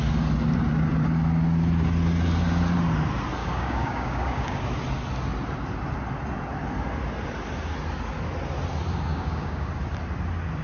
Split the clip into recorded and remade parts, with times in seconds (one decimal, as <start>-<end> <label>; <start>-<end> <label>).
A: 0.0-3.4 recorded; 3.4-4.6 remade; 4.6-9.1 recorded; 9.1-9.7 remade; 9.7-10.6 recorded